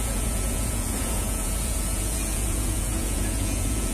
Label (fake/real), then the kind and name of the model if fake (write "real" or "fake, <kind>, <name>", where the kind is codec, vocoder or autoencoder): fake, vocoder, Vocos